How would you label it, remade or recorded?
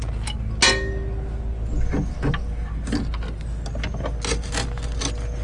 recorded